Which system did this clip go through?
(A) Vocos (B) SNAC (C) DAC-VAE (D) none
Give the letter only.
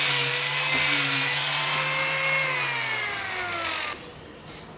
D